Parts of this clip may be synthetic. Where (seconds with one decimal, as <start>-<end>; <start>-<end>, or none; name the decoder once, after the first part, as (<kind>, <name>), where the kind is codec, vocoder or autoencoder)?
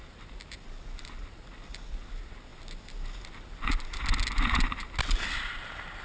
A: none